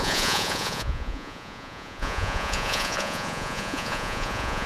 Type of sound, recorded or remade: remade